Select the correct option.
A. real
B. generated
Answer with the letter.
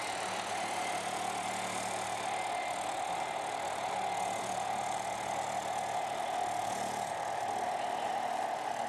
A